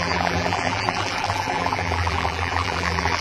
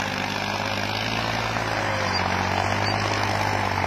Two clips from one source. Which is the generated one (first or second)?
first